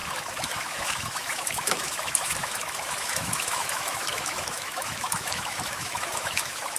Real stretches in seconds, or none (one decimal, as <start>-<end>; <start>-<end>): none